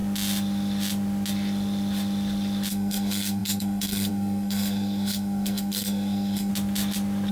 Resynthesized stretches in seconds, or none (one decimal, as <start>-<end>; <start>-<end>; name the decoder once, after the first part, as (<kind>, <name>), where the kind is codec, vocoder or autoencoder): 2.7-6.5 (codec, SNAC)